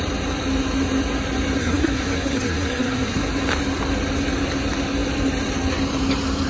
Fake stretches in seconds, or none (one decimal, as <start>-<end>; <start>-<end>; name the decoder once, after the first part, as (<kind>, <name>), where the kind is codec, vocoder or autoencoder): 1.6-3.2 (codec, SNAC)